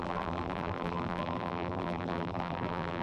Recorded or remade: remade